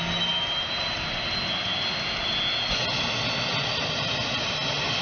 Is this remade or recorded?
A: recorded